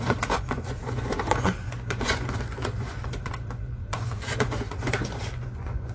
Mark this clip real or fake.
fake